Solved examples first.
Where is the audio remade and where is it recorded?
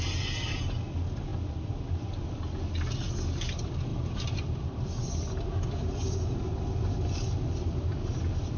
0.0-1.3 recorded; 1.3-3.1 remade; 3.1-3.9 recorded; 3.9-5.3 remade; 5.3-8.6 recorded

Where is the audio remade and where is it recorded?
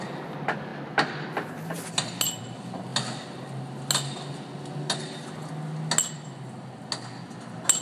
0.0-7.8 recorded